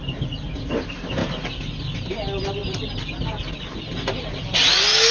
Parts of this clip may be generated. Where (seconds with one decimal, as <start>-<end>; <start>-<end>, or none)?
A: none